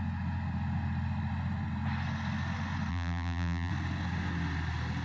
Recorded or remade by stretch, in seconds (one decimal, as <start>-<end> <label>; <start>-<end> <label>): 0.0-2.9 recorded; 2.9-3.7 remade; 3.7-5.0 recorded

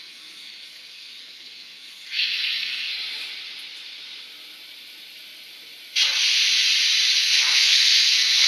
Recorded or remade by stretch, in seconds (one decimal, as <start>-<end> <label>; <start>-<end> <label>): 0.0-2.9 remade; 2.9-7.2 recorded; 7.2-8.5 remade

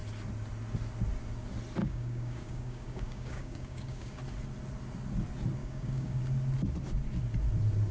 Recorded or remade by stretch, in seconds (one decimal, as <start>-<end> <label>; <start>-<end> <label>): 0.0-1.8 recorded; 1.8-4.2 remade; 4.2-5.6 recorded; 5.6-6.2 remade; 6.2-7.9 recorded

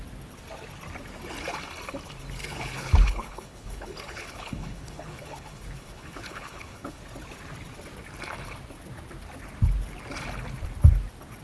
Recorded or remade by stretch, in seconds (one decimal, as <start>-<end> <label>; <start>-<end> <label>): 0.0-2.4 recorded; 2.4-7.0 remade; 7.0-11.4 recorded